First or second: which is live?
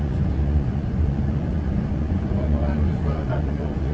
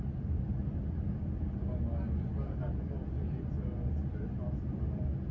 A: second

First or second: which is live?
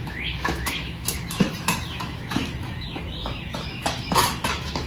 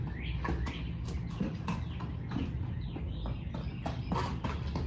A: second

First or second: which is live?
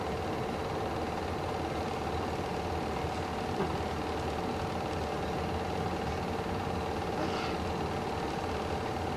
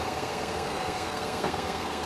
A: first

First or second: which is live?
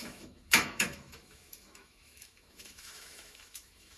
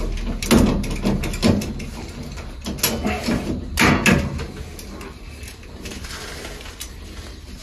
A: second